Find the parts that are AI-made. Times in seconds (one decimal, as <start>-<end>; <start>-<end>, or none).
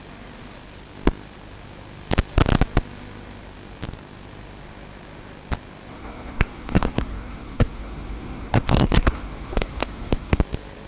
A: 5.9-10.4